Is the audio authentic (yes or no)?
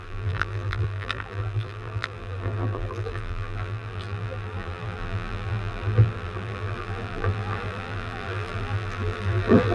no